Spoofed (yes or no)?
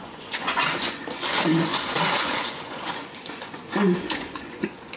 yes